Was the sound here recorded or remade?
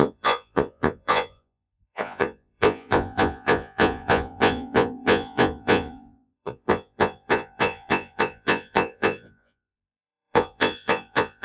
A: remade